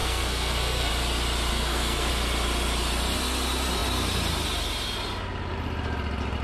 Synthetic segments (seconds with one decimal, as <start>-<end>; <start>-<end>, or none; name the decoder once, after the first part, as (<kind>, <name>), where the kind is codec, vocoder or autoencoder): 0.0-0.9 (codec, SNAC); 1.5-2.1